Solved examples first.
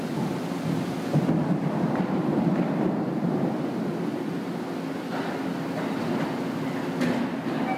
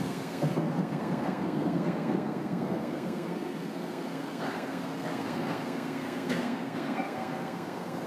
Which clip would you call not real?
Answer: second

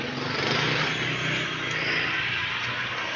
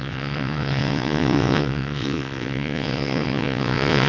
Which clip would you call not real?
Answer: second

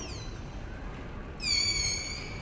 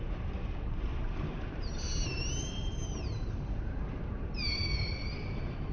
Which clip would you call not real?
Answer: second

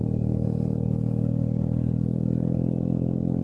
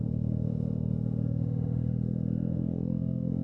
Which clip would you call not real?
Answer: second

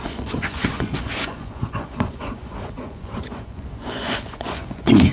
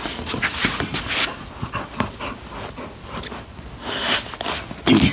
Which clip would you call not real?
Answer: first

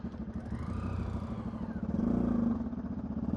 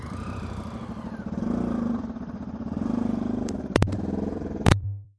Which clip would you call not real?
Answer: second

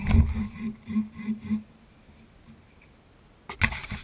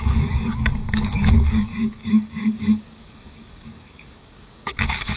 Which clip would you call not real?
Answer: second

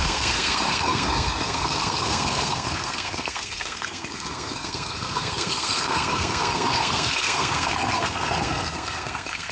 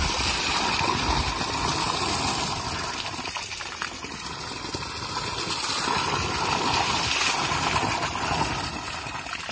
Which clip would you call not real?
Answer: first